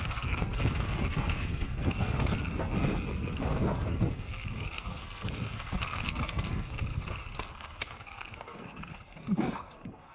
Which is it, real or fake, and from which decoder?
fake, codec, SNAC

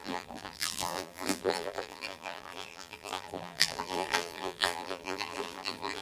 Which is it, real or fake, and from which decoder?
fake, vocoder, BigVGAN v2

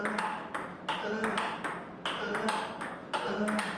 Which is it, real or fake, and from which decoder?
real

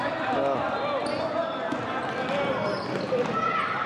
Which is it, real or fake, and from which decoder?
real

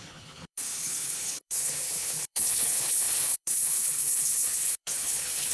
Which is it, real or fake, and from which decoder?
fake, codec, HILCodec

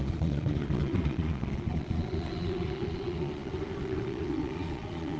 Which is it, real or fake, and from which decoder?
fake, vocoder, Vocos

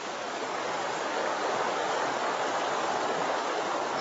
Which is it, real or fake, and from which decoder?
fake, codec, DAC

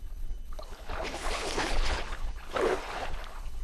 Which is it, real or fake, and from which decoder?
fake, codec, HILCodec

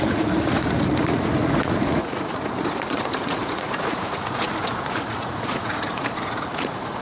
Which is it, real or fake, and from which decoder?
fake, vocoder, Vocos